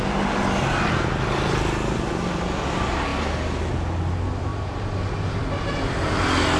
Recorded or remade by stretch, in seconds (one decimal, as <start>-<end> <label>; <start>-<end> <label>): 0.0-4.5 recorded; 4.5-5.8 remade; 5.8-6.6 recorded